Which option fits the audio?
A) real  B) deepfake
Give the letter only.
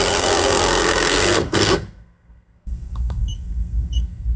B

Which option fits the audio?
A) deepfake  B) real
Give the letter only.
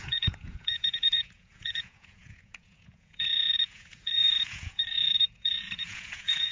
A